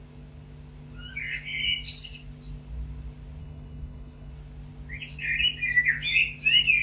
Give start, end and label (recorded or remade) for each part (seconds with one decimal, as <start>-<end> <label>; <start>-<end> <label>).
0.0-3.4 recorded; 3.4-4.3 remade; 4.3-6.8 recorded